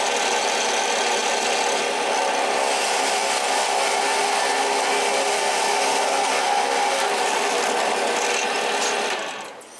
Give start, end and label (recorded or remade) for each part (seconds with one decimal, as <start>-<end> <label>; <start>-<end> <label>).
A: 0.0-9.8 recorded